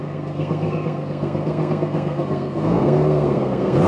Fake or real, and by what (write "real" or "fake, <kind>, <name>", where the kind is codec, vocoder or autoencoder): fake, codec, SNAC